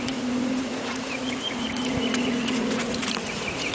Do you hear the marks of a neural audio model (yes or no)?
yes